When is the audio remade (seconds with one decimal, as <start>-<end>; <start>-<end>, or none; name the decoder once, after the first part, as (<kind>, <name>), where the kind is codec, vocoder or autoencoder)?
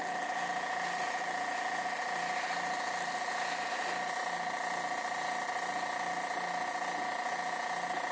none